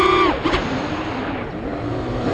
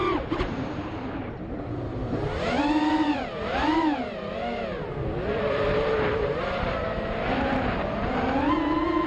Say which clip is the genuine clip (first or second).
first